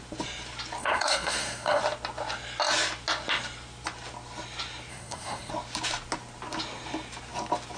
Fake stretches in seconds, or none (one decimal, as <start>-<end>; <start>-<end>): 0.8-1.8; 4.9-5.5